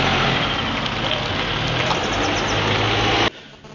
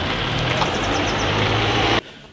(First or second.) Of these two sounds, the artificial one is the second